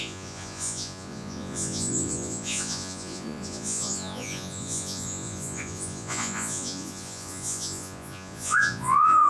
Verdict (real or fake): fake